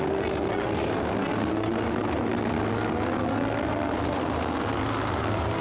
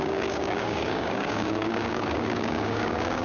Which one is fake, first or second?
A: second